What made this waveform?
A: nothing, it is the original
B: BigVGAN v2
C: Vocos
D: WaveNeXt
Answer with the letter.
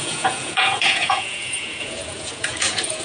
C